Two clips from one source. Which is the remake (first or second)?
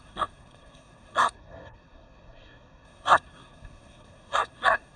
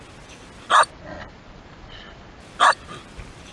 first